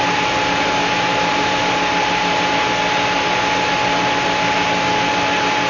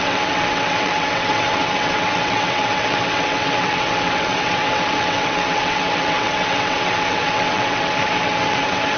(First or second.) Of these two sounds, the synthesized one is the second